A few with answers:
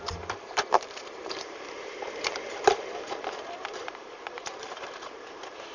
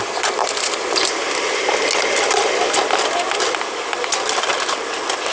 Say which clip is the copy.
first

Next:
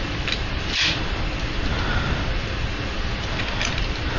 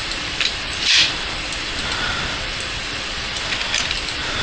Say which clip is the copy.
second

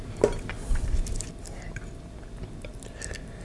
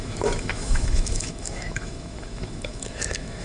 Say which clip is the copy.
second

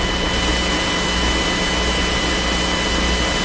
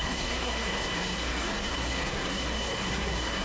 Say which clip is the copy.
second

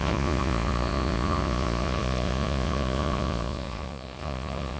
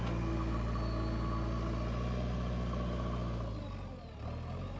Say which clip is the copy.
first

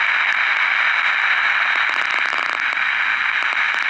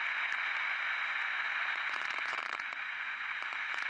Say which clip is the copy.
second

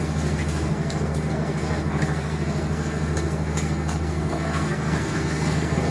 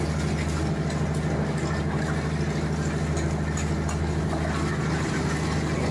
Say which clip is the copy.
first